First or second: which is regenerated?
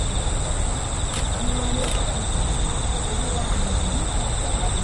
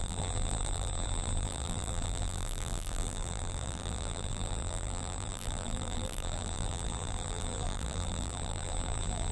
second